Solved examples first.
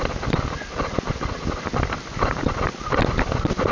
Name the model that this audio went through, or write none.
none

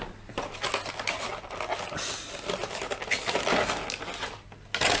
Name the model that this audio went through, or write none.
none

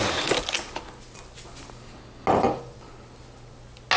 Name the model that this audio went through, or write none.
none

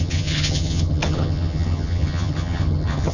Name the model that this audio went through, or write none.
vocoder, HiFi-GAN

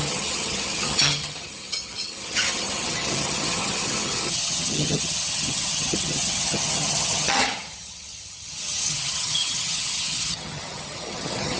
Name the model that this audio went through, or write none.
vocoder, HiFi-GAN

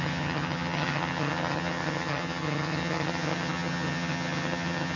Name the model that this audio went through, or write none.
vocoder, HiFi-GAN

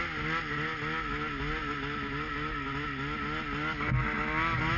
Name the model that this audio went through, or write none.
none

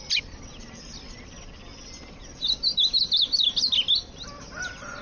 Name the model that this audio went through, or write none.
none